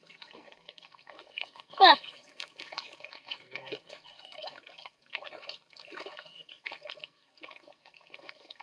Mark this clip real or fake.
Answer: fake